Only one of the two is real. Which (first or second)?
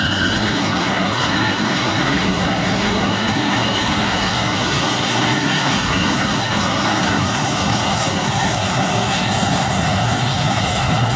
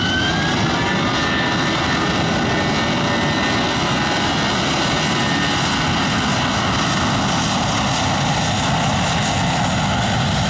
second